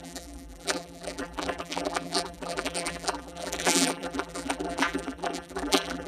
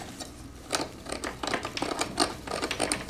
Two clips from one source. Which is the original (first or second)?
second